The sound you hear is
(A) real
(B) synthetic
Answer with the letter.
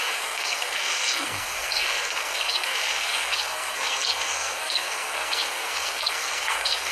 B